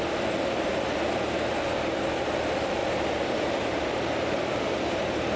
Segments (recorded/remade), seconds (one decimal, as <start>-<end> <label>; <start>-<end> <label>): 0.0-2.8 recorded; 2.8-5.4 remade